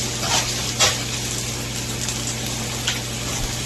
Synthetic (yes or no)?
no